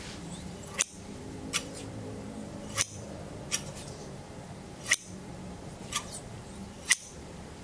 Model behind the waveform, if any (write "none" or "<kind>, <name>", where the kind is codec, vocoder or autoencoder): vocoder, BigVGAN v2